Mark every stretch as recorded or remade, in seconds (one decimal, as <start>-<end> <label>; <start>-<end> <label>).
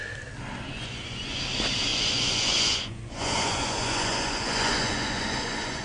0.0-0.7 recorded; 0.7-1.4 remade; 1.4-1.9 recorded; 1.9-5.8 remade